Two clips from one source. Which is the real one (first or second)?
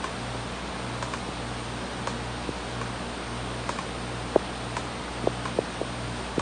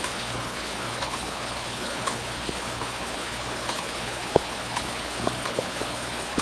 first